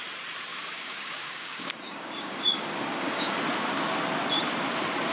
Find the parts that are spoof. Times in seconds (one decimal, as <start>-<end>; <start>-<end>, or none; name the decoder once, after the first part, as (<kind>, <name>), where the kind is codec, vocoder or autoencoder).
0.5-3.4 (codec, DAC)